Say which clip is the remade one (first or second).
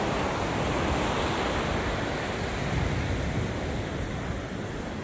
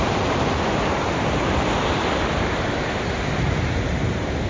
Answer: second